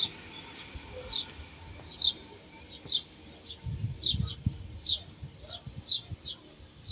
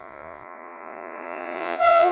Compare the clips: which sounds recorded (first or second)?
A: first